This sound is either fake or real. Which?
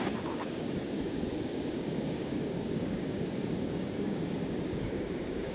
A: fake